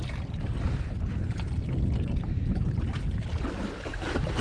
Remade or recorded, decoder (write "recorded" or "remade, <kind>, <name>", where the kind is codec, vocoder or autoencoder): recorded